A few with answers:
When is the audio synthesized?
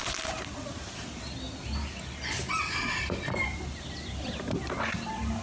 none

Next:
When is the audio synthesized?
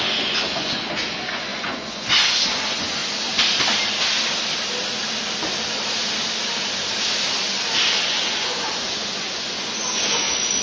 0.0-3.0 (vocoder, Vocos); 8.0-10.6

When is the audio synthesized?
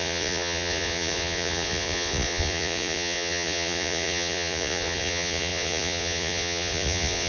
0.0-7.3 (vocoder, Vocos)